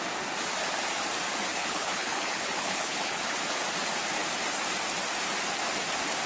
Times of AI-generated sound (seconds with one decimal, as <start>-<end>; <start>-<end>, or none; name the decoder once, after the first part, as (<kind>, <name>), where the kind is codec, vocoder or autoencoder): 1.5-3.4 (codec, HILCodec)